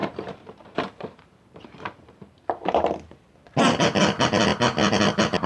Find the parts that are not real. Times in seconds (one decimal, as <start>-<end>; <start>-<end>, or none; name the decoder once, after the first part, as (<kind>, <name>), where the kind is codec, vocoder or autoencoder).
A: 0.0-3.3 (vocoder, BigVGAN v2)